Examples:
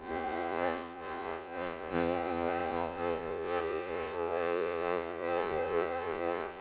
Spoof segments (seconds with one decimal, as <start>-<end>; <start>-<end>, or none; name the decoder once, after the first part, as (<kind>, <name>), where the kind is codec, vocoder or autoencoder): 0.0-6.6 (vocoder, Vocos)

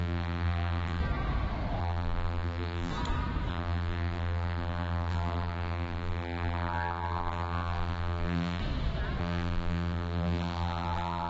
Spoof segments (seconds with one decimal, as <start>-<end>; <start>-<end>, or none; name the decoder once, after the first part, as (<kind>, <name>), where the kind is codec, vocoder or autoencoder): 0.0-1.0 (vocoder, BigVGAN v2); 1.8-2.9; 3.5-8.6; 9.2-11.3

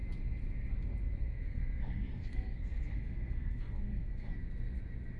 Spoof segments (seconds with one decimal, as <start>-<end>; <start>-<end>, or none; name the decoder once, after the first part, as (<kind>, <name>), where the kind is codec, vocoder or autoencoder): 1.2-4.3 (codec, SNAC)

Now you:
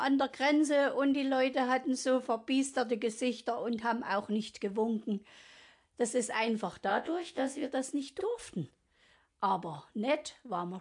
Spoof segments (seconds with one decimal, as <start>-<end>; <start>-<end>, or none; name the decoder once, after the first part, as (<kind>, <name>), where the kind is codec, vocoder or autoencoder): 6.9-7.7 (vocoder, Vocos)

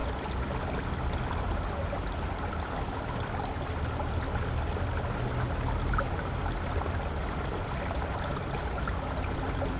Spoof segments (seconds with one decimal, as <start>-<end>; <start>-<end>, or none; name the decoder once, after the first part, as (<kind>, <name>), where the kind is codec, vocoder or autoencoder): none

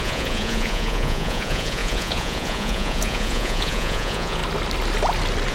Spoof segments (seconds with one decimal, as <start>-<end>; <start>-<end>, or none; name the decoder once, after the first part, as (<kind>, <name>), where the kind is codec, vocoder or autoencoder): 0.0-4.4 (vocoder, Vocos)